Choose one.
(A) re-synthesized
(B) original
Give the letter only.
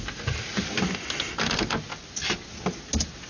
B